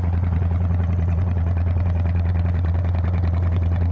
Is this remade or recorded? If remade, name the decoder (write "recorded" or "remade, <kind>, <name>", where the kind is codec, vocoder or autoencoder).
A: remade, vocoder, Vocos